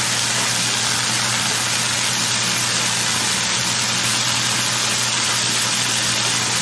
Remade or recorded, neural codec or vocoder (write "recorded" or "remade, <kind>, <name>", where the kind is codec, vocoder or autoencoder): recorded